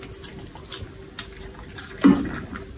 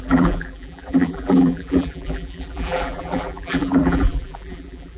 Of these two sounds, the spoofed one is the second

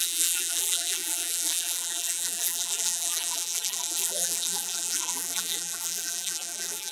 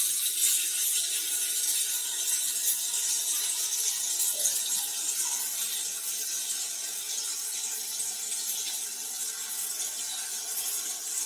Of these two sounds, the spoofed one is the first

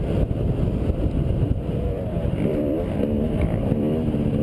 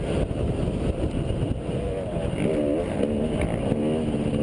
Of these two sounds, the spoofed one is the first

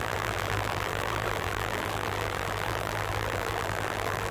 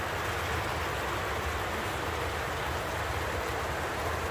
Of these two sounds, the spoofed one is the first